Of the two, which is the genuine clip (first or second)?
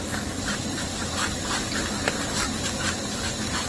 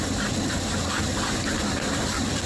first